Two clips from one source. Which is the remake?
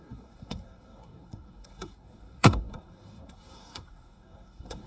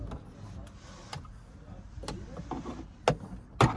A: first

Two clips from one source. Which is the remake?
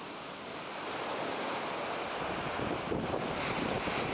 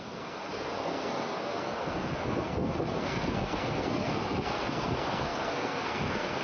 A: second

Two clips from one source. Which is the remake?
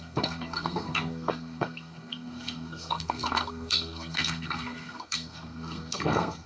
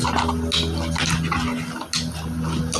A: first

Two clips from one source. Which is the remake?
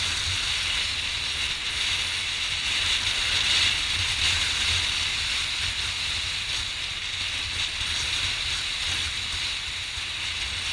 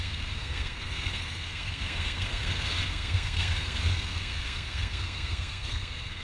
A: second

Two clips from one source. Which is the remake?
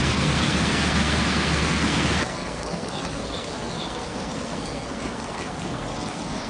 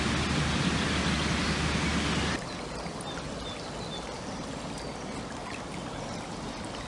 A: first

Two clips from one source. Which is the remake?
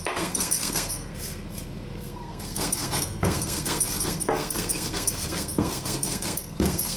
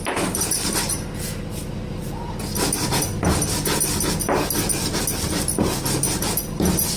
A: first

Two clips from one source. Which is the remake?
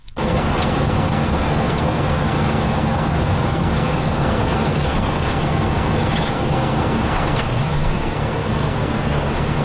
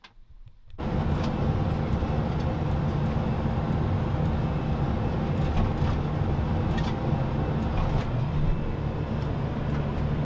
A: first